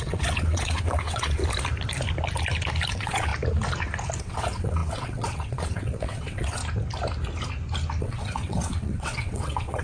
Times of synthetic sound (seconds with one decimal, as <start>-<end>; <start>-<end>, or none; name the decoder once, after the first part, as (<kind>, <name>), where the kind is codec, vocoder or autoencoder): 0.0-1.4 (vocoder, WaveNeXt); 2.9-3.3; 4.2-6.6; 8.0-9.8